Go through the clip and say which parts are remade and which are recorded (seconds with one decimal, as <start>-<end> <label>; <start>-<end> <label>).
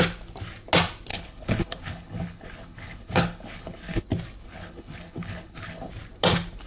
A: 0.0-1.1 recorded; 1.1-4.0 remade; 4.0-4.4 recorded; 4.4-5.9 remade; 5.9-6.7 recorded